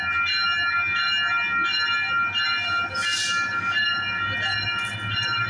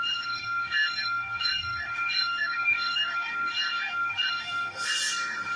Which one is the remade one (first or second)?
second